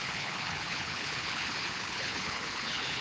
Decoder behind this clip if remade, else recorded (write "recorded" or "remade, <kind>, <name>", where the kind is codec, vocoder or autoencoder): remade, codec, HILCodec